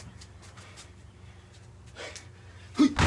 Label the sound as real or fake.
real